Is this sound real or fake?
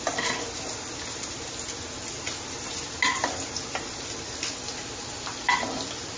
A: real